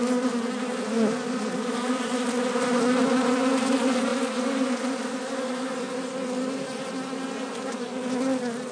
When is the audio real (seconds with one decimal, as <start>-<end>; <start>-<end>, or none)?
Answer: 0.0-8.7